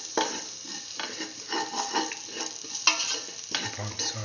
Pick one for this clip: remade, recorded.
recorded